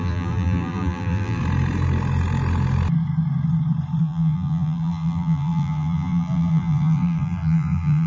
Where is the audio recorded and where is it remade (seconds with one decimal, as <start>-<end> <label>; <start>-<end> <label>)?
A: 0.0-1.4 remade; 1.4-4.0 recorded; 4.0-8.1 remade